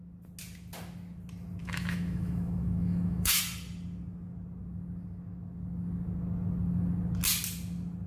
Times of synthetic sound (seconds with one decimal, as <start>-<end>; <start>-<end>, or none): 1.6-3.4

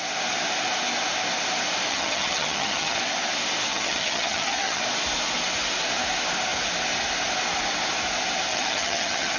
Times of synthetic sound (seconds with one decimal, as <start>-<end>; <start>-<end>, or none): 1.9-3.0; 3.7-4.8; 8.5-9.4